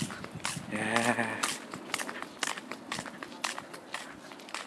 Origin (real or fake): real